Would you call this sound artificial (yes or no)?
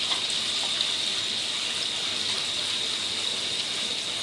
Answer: no